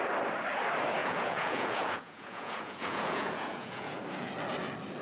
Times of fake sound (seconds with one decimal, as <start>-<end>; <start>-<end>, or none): 1.0-4.0